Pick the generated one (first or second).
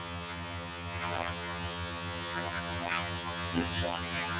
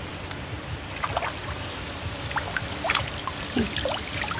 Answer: first